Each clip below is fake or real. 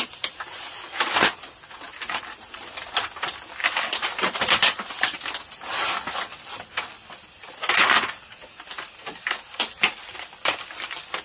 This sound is real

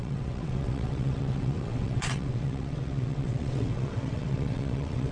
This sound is fake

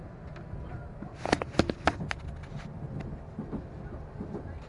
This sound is real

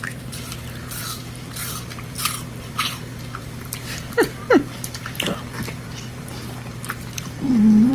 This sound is fake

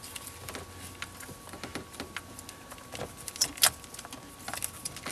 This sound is real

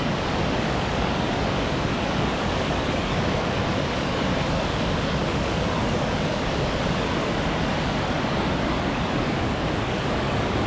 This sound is fake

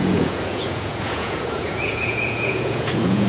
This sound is fake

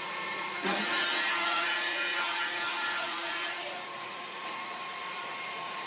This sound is fake